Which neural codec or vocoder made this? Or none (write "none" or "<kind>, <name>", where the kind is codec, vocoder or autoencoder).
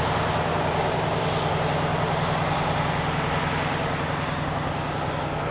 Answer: none